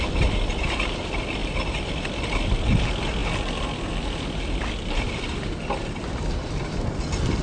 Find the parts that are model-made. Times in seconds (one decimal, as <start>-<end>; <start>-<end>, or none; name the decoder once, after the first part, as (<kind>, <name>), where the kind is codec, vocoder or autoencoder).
none